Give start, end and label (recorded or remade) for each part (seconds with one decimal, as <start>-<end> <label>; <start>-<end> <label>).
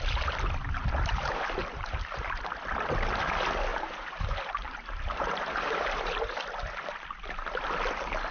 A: 0.0-1.6 recorded; 1.6-2.5 remade; 2.5-3.7 recorded; 3.7-6.4 remade; 6.4-8.3 recorded